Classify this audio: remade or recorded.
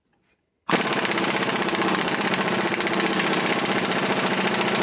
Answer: remade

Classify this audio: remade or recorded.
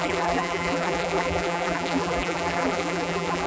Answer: remade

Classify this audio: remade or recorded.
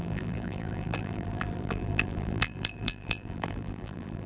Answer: remade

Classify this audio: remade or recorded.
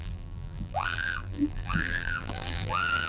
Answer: remade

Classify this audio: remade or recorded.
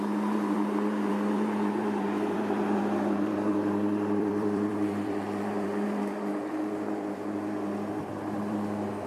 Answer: remade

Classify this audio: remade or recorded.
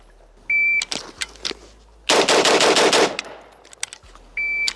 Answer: recorded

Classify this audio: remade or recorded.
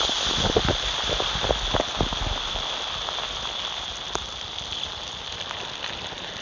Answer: recorded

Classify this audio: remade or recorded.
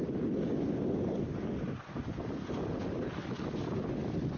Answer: recorded